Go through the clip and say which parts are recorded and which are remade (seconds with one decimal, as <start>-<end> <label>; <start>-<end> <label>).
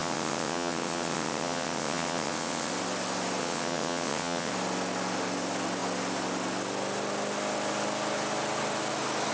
0.0-2.7 remade; 2.7-3.4 recorded; 3.4-4.5 remade; 4.5-9.3 recorded